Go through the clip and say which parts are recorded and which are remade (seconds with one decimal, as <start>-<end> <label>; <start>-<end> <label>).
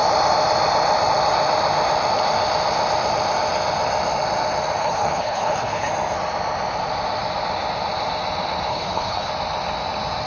0.0-4.8 recorded; 4.8-5.9 remade; 5.9-8.7 recorded; 8.7-9.3 remade; 9.3-10.3 recorded